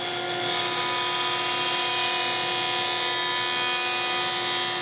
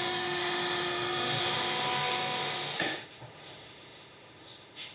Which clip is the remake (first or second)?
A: second